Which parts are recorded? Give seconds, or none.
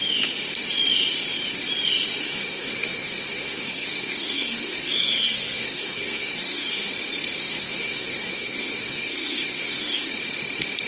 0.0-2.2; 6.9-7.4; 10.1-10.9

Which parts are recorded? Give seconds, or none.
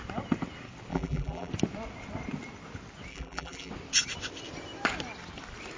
0.0-0.9; 1.5-3.1; 3.7-5.8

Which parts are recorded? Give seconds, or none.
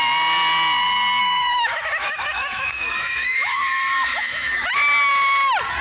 0.0-1.2; 4.7-5.8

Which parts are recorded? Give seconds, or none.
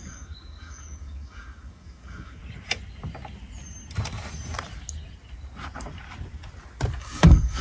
2.4-7.0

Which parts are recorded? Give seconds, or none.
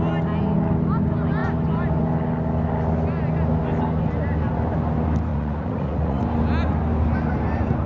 0.0-5.3; 6.2-7.9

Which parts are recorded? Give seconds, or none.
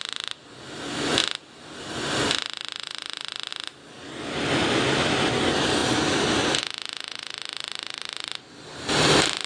0.0-9.5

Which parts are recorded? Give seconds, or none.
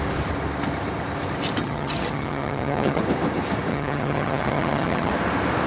0.0-1.6; 3.0-3.7; 5.1-5.7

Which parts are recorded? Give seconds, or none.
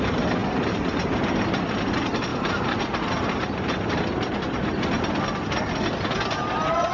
0.0-0.4; 1.7-2.3; 3.9-6.9